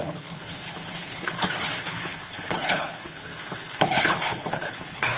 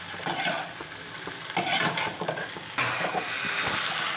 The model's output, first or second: first